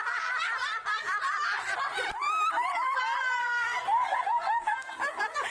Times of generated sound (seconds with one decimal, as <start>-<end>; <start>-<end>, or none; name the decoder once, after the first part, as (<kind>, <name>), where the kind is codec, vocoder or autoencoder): 3.4-4.9 (codec, SNAC)